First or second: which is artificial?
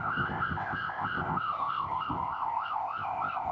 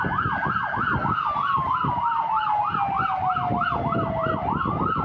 first